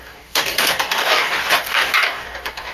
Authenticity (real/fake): fake